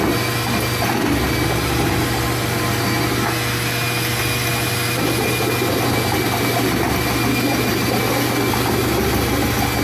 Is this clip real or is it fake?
real